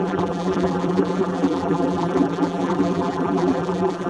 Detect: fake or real fake